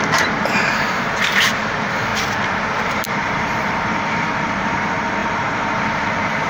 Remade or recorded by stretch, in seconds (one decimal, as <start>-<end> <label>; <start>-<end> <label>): 0.0-2.1 remade; 2.1-2.8 recorded; 2.8-6.5 remade

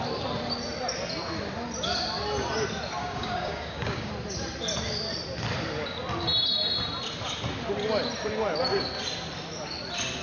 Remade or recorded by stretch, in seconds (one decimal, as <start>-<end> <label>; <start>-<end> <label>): 0.0-3.0 recorded; 3.0-4.1 remade; 4.1-10.2 recorded

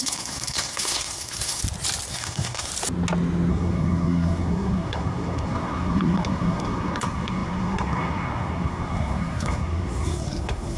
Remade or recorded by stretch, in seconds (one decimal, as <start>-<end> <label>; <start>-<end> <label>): 0.0-1.6 remade; 1.6-2.1 recorded; 2.1-2.7 remade; 2.7-3.5 recorded; 3.5-10.8 remade

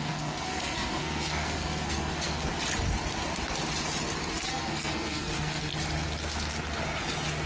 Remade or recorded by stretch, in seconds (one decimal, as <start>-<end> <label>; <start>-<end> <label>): 0.0-2.5 remade; 2.5-4.5 recorded; 4.5-5.7 remade; 5.7-7.5 recorded